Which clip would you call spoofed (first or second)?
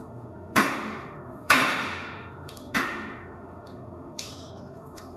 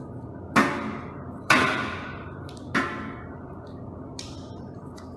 first